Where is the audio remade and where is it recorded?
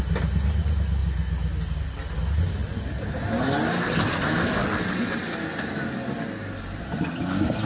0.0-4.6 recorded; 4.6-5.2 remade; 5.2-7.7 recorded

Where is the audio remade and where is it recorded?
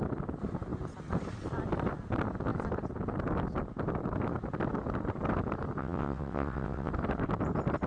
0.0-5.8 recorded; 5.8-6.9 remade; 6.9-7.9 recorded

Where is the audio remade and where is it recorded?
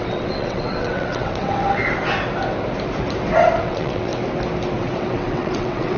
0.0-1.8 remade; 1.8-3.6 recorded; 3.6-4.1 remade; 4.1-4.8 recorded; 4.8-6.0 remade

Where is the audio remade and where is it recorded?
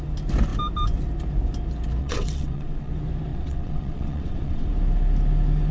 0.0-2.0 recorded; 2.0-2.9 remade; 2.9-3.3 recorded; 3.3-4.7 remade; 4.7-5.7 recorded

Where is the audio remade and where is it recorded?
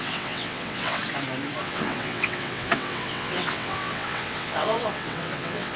0.0-1.0 remade; 1.0-1.6 recorded; 1.6-5.8 remade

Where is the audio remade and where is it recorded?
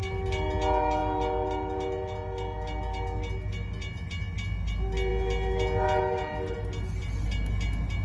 0.0-8.0 recorded